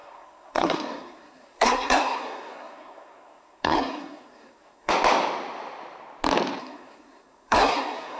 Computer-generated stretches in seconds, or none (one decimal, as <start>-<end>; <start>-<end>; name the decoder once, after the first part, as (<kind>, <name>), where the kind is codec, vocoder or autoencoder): 0.0-4.9 (codec, SNAC); 6.6-8.2